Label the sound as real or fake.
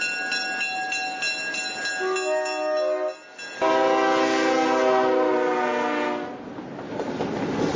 real